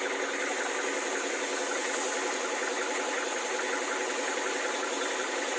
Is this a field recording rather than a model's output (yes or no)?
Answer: yes